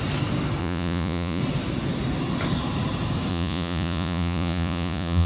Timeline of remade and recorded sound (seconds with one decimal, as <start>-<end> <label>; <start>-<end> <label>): 0.0-0.6 recorded; 0.6-1.4 remade; 1.4-3.3 recorded; 3.3-5.3 remade